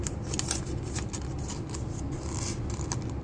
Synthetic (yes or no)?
no